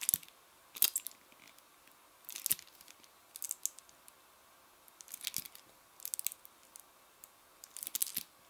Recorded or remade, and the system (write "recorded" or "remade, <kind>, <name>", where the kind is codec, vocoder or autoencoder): recorded